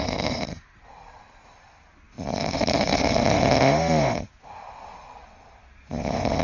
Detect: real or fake real